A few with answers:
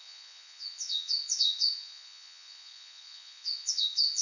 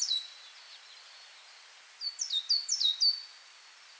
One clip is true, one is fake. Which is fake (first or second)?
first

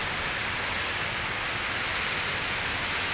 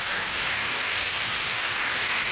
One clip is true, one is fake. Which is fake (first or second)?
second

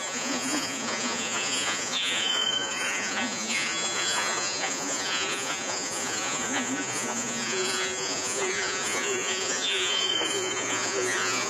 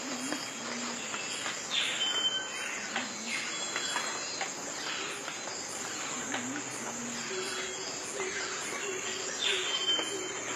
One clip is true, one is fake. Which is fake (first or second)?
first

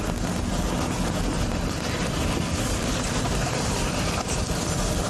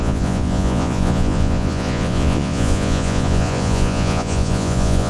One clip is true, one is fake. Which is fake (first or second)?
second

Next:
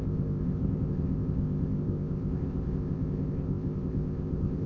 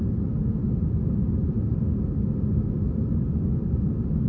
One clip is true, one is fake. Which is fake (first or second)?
first